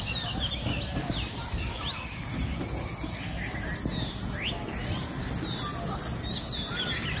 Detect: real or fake real